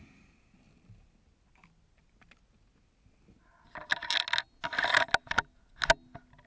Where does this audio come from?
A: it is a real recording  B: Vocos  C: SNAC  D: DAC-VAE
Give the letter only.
A